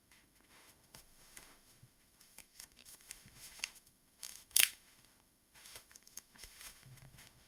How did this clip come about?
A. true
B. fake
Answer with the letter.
B